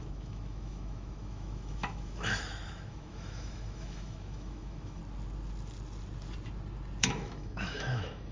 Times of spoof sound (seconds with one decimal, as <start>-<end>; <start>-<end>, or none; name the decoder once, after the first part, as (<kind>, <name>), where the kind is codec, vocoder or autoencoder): 0.0-5.0 (autoencoder, DAC-VAE); 7.0-8.3